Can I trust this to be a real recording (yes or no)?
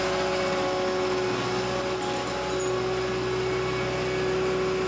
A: yes